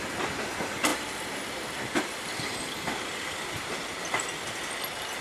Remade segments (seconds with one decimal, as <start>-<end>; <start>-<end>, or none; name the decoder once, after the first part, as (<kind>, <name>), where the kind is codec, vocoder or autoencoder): 0.9-4.0 (vocoder, BigVGAN v2)